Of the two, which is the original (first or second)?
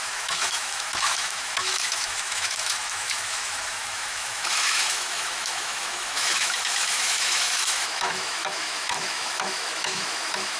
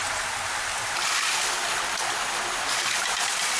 second